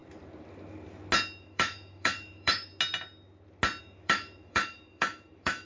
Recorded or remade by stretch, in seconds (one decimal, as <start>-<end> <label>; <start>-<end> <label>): 0.0-1.4 recorded; 1.4-2.7 remade; 2.7-3.8 recorded; 3.8-5.7 remade